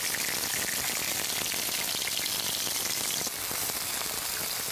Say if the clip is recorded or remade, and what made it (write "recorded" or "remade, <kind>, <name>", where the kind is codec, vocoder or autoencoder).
recorded